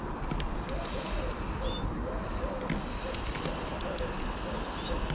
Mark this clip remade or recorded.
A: recorded